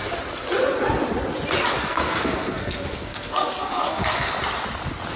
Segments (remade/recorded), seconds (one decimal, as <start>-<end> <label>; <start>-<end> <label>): 0.0-1.8 recorded; 1.8-4.3 remade; 4.3-5.2 recorded